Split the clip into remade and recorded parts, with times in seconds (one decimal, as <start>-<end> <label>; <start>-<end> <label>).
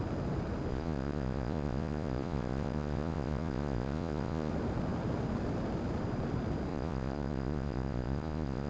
0.0-0.7 recorded; 0.7-4.5 remade; 4.5-6.7 recorded; 6.7-8.7 remade